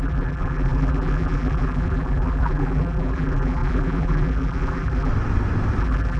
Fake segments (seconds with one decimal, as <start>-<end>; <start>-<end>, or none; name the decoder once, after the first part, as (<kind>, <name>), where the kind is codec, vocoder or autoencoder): 0.0-5.1 (vocoder, BigVGAN v2); 5.8-6.2